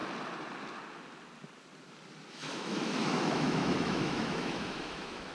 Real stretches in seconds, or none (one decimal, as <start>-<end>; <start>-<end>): 0.0-2.3